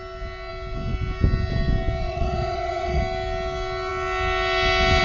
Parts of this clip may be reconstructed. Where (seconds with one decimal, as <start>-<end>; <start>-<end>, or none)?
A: 2.0-3.0